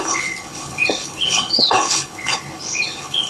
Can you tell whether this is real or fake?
fake